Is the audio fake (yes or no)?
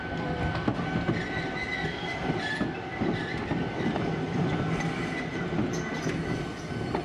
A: no